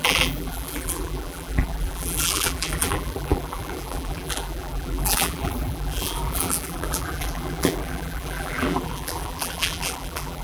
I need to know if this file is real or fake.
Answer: fake